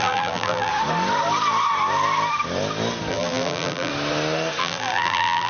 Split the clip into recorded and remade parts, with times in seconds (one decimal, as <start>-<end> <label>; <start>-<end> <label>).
0.0-0.7 remade; 0.7-3.1 recorded; 3.1-3.9 remade; 3.9-4.6 recorded; 4.6-5.5 remade